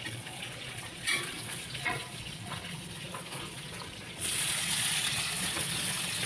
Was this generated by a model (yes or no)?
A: yes